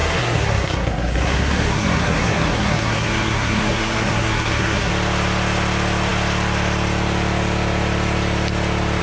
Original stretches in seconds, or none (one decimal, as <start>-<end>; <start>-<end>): 4.9-9.0